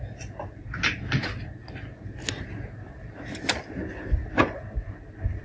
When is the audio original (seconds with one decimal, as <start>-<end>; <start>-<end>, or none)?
0.0-5.4